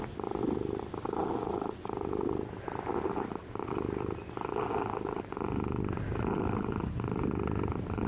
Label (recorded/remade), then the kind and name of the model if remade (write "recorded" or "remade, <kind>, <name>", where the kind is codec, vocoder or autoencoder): recorded